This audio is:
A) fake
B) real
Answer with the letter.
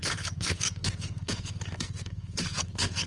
A